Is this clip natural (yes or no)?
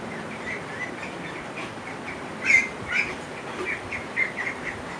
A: yes